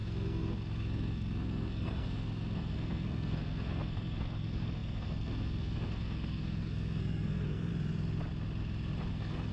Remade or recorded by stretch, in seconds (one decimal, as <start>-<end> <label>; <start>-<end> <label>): 0.0-7.7 remade; 7.7-9.1 recorded; 9.1-9.5 remade